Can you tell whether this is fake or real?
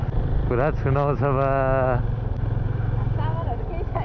real